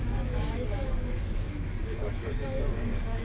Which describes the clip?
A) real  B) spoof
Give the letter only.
B